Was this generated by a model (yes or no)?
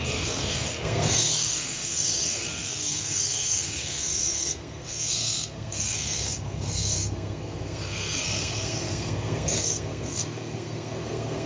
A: yes